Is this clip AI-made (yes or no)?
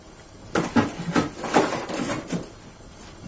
no